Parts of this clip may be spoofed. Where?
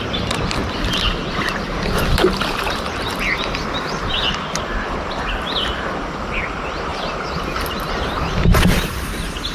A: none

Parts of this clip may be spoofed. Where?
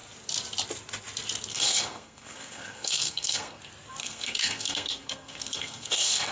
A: 1.5-3.6 (codec, SNAC); 4.0-6.3